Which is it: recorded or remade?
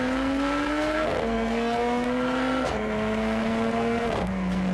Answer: remade